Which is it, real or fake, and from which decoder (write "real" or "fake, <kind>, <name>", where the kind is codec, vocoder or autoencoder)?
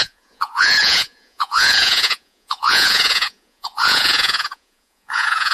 fake, vocoder, Vocos